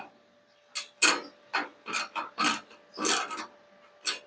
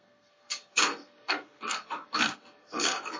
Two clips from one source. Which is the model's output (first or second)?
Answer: second